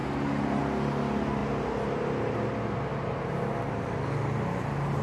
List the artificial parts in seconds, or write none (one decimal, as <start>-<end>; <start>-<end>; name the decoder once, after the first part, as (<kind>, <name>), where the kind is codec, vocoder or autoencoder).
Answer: none